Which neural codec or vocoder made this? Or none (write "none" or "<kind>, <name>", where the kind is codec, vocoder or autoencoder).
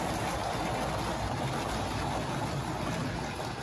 none